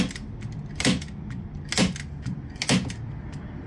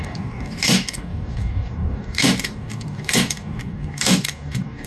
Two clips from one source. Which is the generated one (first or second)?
second